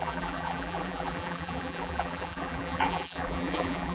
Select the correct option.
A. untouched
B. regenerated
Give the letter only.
B